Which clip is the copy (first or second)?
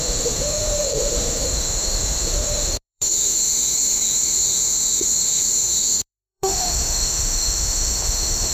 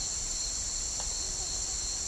first